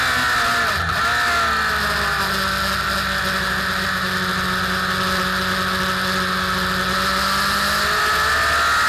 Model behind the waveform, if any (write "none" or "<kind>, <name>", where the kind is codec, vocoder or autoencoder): none